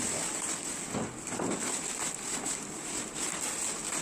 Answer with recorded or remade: recorded